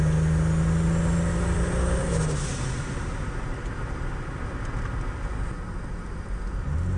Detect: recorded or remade recorded